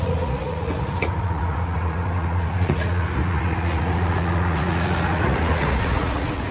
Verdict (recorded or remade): remade